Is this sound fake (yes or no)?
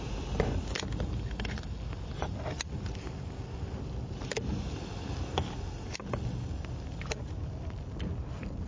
no